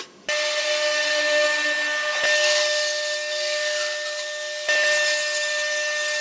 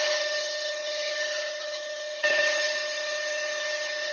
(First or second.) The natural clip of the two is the first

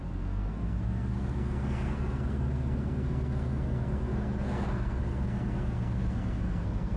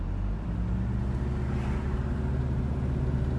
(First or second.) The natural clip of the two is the second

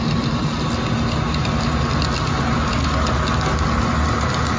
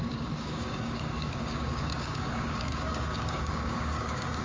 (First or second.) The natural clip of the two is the first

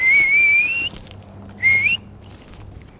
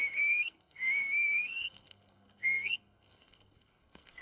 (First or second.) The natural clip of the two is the first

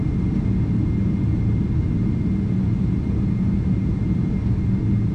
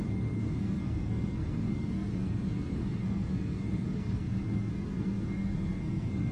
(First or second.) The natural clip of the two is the first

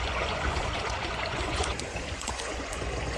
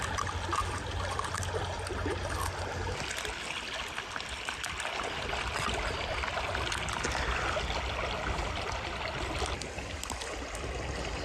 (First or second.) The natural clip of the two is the second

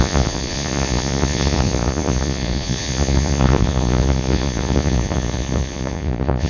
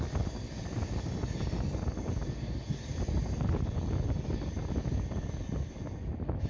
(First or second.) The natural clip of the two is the second